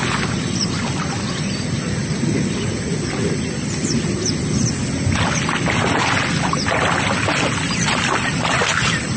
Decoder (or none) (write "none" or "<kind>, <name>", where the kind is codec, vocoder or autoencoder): none